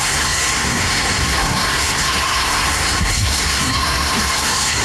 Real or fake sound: fake